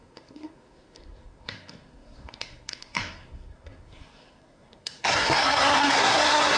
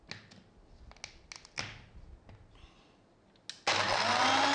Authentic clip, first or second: second